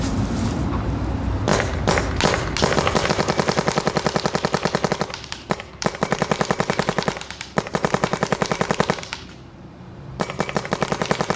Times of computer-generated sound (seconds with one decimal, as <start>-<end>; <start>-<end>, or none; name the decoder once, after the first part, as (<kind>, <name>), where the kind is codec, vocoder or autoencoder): 0.0-1.5 (vocoder, BigVGAN v2); 4.9-11.4